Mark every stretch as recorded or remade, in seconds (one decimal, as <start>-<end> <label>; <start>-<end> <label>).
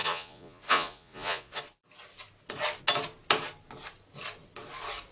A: 0.0-1.6 remade; 1.6-5.1 recorded